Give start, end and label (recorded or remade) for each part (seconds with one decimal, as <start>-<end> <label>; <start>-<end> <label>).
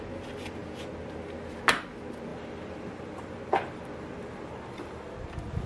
0.0-2.3 recorded; 2.3-5.7 remade